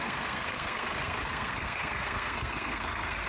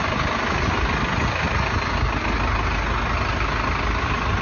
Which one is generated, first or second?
first